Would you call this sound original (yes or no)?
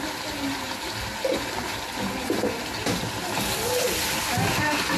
yes